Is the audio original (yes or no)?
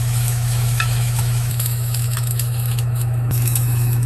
no